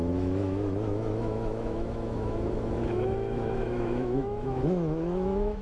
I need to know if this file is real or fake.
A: fake